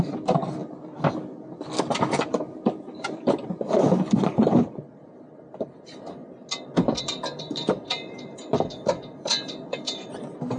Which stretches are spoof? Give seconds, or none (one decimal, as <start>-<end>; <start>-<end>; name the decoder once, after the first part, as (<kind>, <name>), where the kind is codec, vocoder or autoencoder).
0.0-0.6 (vocoder, BigVGAN v2); 1.6-6.2; 7.0-10.6